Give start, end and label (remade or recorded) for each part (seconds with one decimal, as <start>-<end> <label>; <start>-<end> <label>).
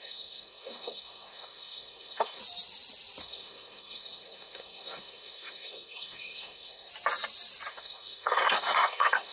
0.0-2.4 remade; 2.4-3.2 recorded; 3.2-6.9 remade; 6.9-7.7 recorded; 7.7-9.3 remade